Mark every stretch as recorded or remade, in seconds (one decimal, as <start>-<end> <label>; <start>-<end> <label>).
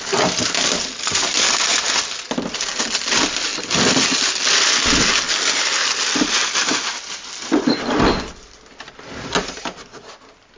0.0-10.6 recorded